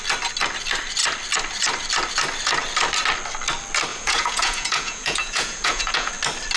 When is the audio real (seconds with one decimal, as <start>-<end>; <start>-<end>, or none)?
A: 0.0-3.9; 6.1-6.6